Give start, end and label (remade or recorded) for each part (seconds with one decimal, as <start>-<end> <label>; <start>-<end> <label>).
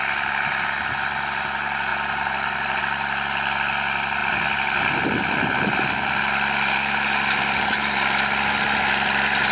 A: 0.0-1.9 recorded; 1.9-2.8 remade; 2.8-9.5 recorded